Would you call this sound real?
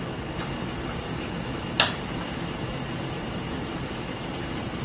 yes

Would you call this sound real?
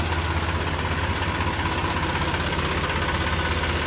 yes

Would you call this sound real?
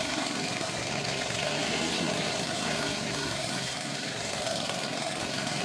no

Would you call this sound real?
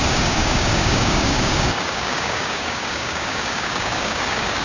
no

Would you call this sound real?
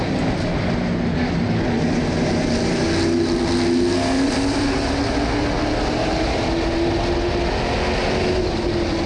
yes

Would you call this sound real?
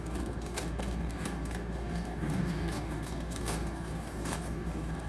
no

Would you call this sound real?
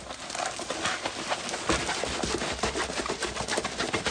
yes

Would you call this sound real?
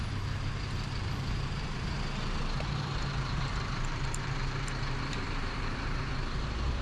no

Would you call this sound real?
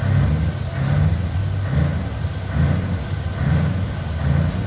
yes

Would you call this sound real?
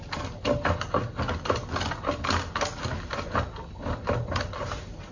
yes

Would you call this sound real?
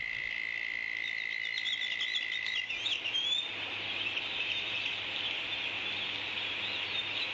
yes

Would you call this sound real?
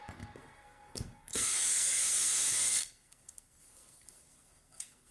no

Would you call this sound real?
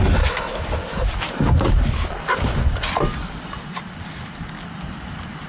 yes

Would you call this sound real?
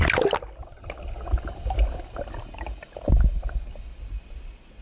yes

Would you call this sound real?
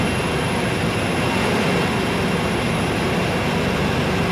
yes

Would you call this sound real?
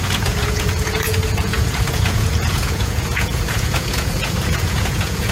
no